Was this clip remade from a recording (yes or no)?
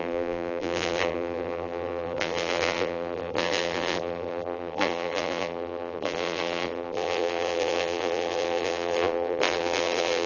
yes